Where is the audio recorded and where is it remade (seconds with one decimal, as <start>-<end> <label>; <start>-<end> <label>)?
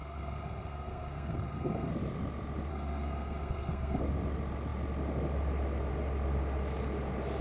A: 0.0-1.9 remade; 1.9-2.7 recorded; 2.7-4.0 remade; 4.0-7.4 recorded